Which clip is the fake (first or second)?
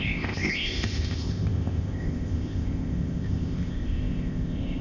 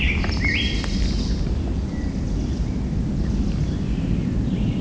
first